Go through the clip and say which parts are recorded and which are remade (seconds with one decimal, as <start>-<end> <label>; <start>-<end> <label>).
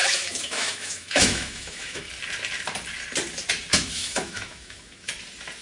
0.0-2.1 remade; 2.1-3.7 recorded; 3.7-5.1 remade; 5.1-5.6 recorded